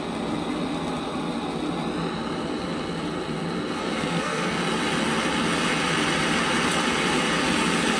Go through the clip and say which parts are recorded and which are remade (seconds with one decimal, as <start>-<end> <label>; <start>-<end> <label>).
0.0-3.8 recorded; 3.8-4.6 remade; 4.6-8.0 recorded